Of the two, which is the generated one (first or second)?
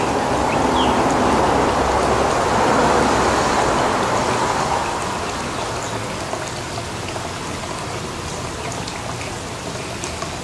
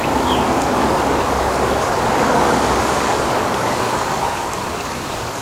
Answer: second